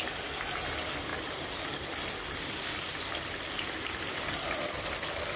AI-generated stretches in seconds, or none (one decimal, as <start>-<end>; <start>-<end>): none